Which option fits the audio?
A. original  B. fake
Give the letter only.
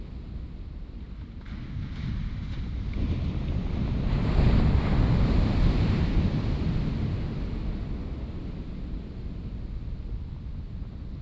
A